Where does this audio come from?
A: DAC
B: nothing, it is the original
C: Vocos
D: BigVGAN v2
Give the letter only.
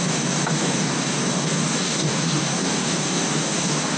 A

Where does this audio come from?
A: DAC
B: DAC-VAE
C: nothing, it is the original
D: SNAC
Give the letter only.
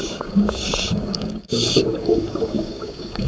A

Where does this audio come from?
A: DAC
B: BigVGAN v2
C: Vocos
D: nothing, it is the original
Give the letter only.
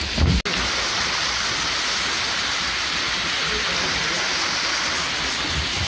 D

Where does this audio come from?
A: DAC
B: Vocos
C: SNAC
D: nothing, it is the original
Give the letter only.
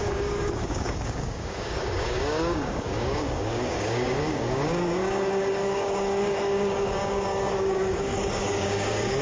A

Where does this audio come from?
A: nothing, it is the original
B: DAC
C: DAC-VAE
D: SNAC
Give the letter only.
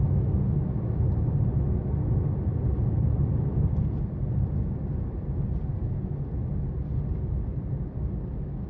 A